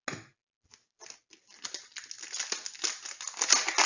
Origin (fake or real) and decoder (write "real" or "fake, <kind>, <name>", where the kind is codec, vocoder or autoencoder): real